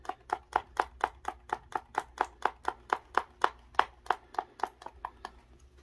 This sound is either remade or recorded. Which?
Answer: recorded